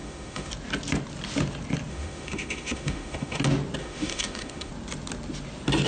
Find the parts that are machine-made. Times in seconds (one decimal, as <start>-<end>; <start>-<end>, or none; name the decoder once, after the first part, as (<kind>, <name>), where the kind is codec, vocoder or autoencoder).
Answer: 0.0-0.5 (autoencoder, DAC-VAE); 1.9-3.4; 3.8-4.7